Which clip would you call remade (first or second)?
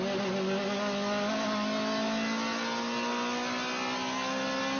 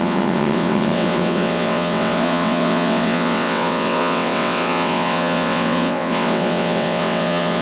second